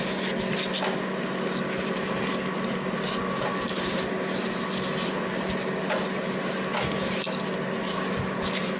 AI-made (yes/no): no